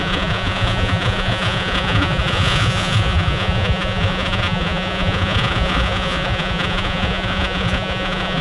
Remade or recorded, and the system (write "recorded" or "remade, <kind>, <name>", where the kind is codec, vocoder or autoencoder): remade, vocoder, Vocos